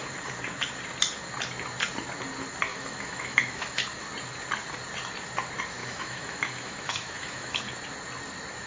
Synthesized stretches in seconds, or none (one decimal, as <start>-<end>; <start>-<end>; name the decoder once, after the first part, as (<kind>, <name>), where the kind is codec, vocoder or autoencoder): 2.7-3.8 (autoencoder, DAC-VAE); 5.8-7.6

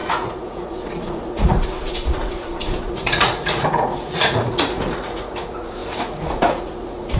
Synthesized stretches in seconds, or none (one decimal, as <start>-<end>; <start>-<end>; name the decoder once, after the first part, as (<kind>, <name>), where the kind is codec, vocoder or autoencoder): 0.0-7.2 (vocoder, Vocos)

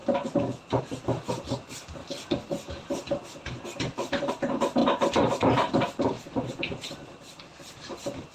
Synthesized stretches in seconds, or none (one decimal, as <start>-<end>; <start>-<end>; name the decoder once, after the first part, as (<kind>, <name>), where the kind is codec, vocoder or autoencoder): 4.8-6.2 (vocoder, BigVGAN v2)

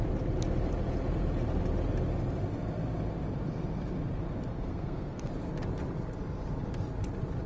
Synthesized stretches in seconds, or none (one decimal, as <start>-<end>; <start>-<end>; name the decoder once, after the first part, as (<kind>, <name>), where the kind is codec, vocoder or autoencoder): 4.5-5.3 (codec, SNAC)

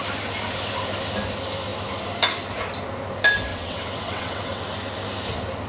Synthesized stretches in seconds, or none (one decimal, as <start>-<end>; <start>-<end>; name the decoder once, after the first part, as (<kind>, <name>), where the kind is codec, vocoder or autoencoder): 3.5-4.6 (vocoder, WaveNeXt)

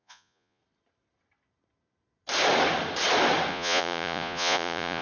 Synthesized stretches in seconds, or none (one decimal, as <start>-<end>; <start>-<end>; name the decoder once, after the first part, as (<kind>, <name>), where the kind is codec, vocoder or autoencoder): 0.0-0.6 (vocoder, Vocos); 3.5-5.0